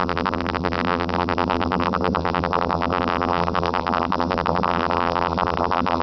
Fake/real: fake